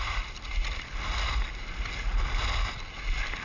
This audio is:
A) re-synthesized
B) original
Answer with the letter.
B